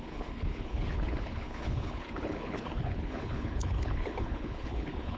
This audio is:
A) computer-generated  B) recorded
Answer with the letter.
A